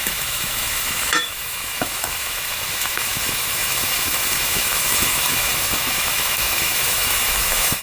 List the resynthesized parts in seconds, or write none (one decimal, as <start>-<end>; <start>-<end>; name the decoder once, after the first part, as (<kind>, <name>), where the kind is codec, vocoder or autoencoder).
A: 0.0-7.8 (autoencoder, DAC-VAE)